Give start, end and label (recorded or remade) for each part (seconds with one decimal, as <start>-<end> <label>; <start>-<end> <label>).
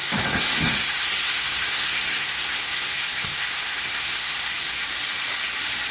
0.0-4.8 remade; 4.8-5.9 recorded